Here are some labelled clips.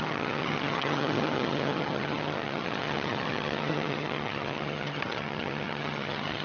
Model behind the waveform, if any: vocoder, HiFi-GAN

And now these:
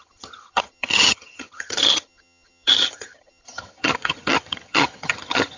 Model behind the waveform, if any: vocoder, HiFi-GAN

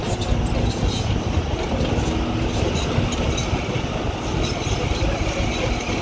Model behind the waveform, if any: none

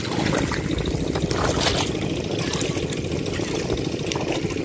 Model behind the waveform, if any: none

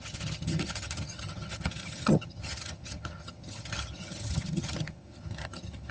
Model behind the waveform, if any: vocoder, HiFi-GAN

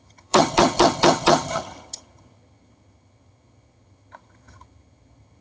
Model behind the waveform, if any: vocoder, HiFi-GAN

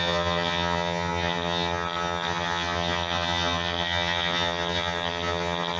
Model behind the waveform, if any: vocoder, HiFi-GAN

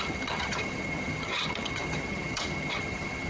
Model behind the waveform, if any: vocoder, HiFi-GAN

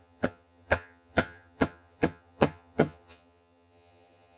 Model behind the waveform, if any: vocoder, HiFi-GAN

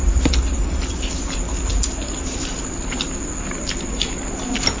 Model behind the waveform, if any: none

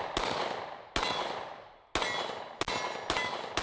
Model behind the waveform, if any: none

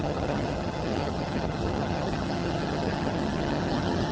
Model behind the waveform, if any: vocoder, HiFi-GAN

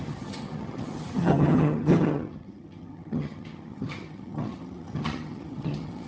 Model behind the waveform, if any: vocoder, HiFi-GAN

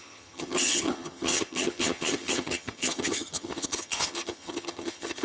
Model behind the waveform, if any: vocoder, HiFi-GAN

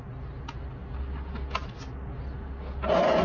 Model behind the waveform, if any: none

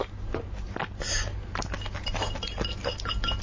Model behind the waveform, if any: none